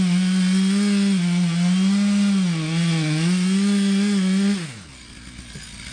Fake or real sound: real